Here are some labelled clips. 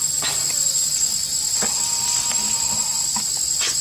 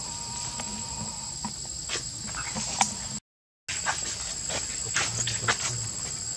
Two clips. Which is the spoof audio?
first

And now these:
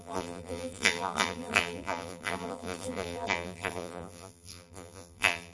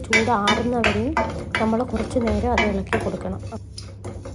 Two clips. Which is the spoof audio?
first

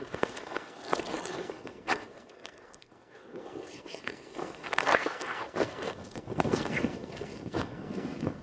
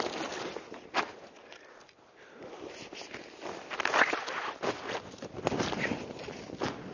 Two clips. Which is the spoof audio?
first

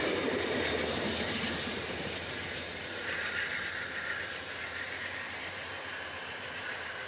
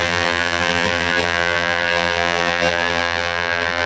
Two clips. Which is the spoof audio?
second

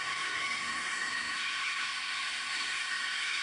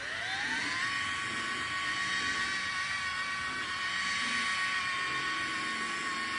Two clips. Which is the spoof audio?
first